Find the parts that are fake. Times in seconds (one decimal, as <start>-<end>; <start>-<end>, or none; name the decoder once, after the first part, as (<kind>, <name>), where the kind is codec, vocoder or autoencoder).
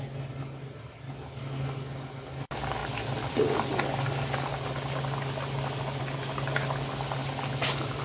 none